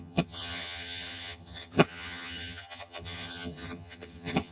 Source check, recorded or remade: remade